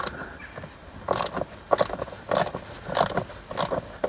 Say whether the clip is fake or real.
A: real